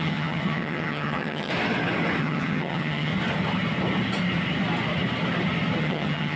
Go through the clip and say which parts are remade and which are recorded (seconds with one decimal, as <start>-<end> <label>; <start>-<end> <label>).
0.0-1.5 remade; 1.5-2.2 recorded; 2.2-3.1 remade; 3.1-5.8 recorded; 5.8-6.4 remade